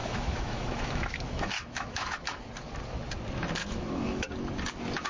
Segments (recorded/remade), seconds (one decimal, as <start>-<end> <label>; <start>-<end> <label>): 0.0-2.4 remade; 2.4-3.6 recorded; 3.6-4.3 remade; 4.3-5.1 recorded